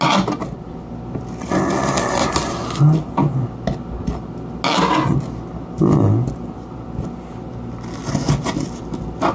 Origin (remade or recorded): recorded